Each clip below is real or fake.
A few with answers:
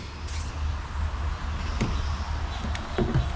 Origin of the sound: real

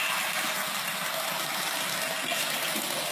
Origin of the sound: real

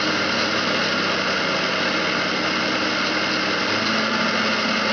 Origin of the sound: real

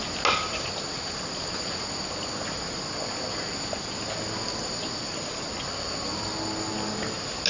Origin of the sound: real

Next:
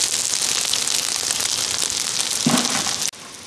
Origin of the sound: real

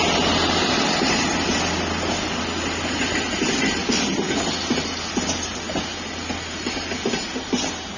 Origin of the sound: real